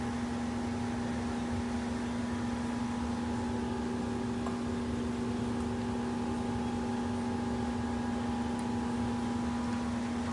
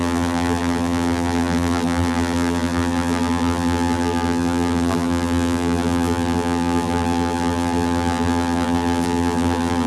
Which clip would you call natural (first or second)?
first